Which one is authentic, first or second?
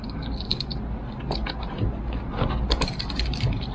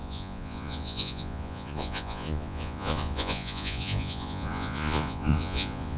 first